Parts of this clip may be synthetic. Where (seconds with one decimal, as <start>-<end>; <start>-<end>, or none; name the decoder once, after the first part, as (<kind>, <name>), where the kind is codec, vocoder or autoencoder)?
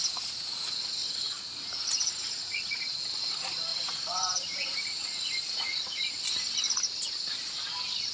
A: 0.0-3.0 (vocoder, Vocos); 3.7-6.0